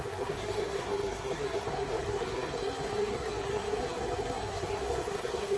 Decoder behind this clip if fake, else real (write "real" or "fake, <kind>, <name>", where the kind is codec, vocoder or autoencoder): fake, codec, SNAC